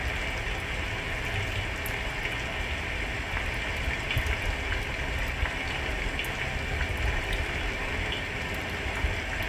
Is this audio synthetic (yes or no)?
no